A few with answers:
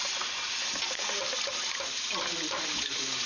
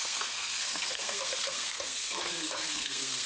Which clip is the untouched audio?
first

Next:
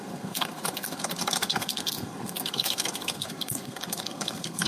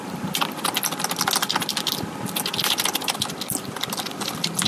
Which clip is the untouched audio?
second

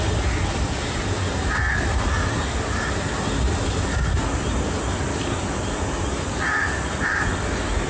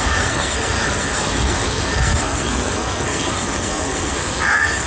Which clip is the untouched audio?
first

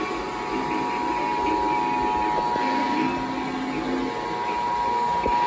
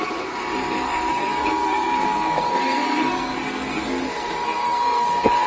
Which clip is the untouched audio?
first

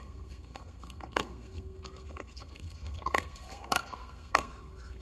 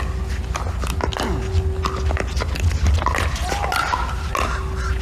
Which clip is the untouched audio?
second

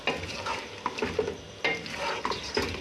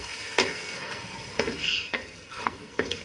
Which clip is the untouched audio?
first